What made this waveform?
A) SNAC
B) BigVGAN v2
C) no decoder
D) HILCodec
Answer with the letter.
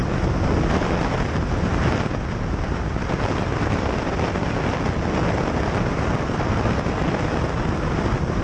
C